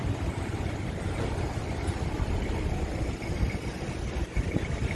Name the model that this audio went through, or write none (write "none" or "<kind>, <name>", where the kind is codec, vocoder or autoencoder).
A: none